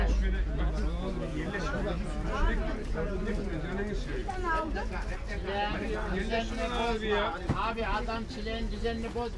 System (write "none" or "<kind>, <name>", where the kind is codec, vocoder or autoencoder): none